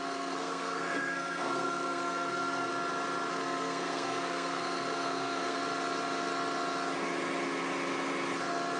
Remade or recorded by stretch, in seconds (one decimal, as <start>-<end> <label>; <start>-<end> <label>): 0.0-2.7 remade; 2.7-3.3 recorded; 3.3-5.6 remade; 5.6-8.8 recorded